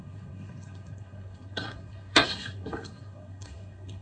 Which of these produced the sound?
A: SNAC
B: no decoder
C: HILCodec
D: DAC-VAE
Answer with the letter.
A